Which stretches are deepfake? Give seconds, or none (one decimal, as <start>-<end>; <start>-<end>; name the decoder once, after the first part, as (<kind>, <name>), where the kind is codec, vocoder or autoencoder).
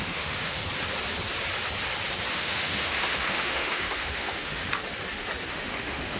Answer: 0.0-0.6 (autoencoder, DAC-VAE); 2.3-4.6; 5.5-6.2